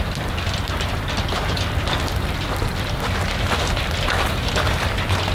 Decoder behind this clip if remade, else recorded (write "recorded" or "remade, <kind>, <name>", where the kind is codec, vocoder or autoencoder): recorded